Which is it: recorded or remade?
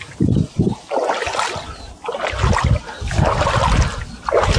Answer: recorded